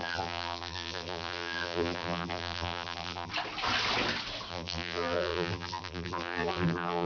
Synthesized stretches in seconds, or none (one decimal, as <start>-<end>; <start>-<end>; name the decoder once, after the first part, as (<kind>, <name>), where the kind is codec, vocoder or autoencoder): 0.0-3.3 (vocoder, BigVGAN v2); 4.5-7.0